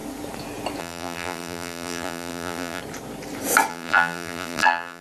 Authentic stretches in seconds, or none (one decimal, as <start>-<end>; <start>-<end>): 0.0-0.8; 2.8-3.7